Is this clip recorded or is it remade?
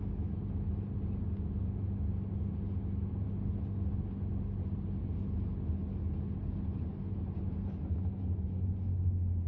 recorded